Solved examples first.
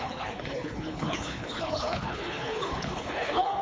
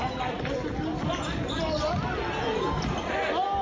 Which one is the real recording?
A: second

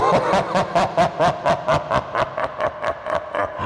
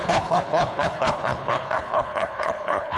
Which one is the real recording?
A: first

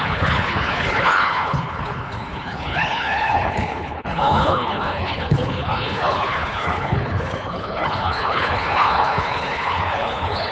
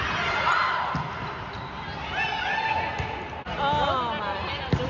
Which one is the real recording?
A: second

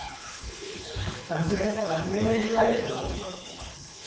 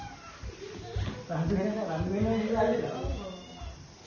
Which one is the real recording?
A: second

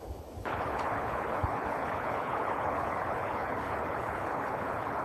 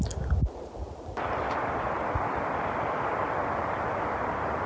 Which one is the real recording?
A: second